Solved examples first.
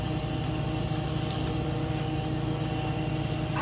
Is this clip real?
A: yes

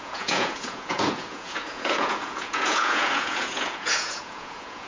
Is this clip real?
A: no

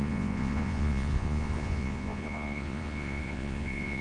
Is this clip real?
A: no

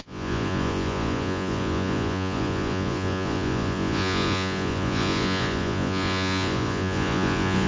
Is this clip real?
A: no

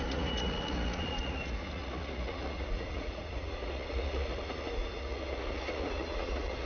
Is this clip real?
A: no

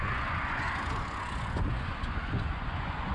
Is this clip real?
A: no